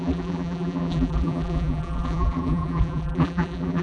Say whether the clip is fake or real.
fake